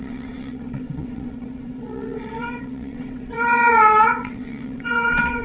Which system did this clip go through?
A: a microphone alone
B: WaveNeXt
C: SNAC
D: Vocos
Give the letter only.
B